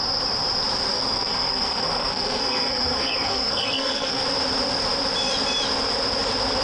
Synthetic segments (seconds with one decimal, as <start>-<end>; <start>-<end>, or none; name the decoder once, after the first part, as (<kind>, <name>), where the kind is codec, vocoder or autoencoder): 0.9-4.2 (codec, SNAC)